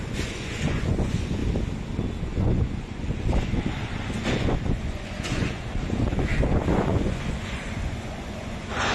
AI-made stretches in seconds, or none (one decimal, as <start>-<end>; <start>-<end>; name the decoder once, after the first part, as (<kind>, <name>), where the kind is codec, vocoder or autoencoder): 0.0-1.4 (vocoder, Vocos); 2.2-8.9